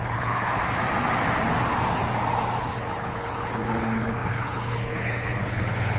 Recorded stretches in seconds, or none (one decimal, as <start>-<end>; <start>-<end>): 0.6-2.6